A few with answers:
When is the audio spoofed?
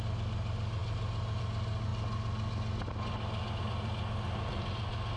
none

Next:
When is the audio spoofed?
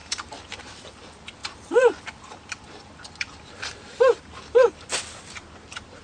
0.0-0.6; 1.4-5.0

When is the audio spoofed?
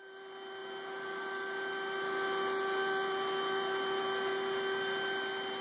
none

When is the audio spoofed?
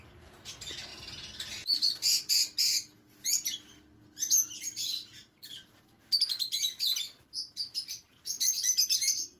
none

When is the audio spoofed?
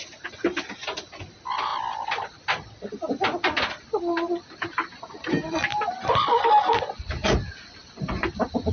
7.2-8.7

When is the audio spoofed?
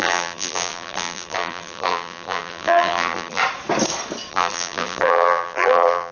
0.0-3.4; 4.3-6.1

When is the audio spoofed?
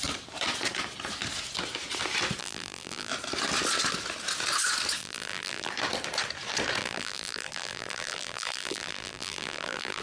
2.4-3.1; 5.0-5.7; 6.8-10.0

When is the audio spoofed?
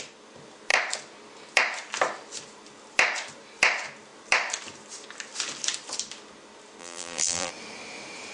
6.8-7.5